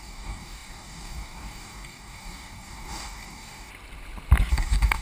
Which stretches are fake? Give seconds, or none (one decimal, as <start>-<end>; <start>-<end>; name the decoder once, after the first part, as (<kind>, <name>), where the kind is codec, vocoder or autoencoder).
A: 0.0-3.7 (codec, DAC); 4.5-5.0

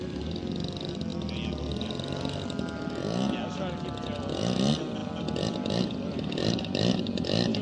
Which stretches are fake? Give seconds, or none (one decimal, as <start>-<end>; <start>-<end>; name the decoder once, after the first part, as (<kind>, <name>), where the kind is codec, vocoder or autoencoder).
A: none

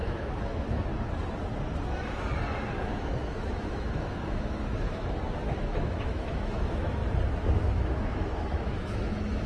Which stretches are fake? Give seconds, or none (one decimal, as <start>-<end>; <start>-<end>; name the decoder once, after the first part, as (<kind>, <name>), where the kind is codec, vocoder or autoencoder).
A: 0.0-0.9 (autoencoder, DAC-VAE); 2.9-7.0; 7.6-9.5

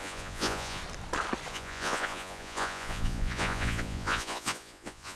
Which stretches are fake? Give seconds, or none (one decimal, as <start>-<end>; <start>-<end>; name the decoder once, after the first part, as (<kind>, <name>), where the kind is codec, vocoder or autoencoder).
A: 0.0-0.8 (vocoder, Vocos); 1.5-5.2